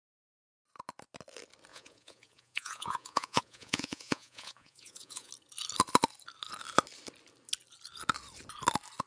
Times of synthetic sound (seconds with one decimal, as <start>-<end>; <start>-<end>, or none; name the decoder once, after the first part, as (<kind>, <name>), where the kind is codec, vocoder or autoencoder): 1.7-5.3 (vocoder, Vocos)